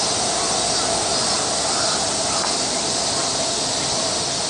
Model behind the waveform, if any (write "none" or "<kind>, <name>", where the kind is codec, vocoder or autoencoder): none